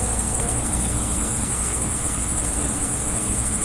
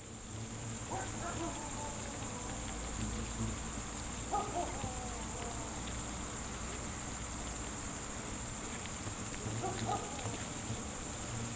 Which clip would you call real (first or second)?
second